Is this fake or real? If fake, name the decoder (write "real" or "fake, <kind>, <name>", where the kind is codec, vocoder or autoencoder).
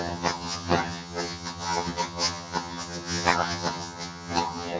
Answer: fake, vocoder, HiFi-GAN